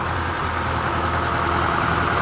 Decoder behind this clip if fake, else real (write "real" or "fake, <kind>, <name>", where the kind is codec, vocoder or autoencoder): real